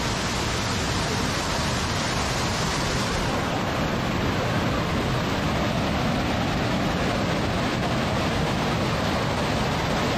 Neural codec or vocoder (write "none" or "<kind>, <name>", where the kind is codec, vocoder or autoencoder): none